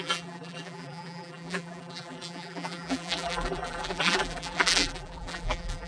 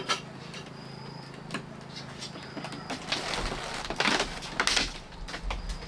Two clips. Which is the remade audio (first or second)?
first